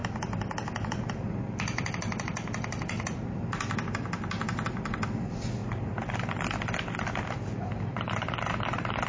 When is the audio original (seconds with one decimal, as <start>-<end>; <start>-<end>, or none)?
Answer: 1.9-5.6; 8.5-9.1